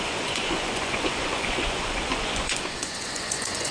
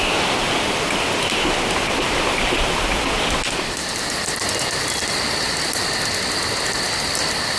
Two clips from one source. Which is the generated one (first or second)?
first